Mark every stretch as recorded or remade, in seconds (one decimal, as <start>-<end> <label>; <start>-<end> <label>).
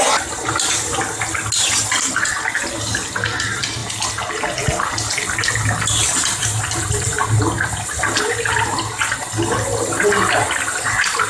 0.0-11.3 recorded